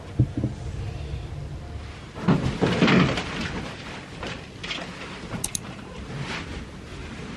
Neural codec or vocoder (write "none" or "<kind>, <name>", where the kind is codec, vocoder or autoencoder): none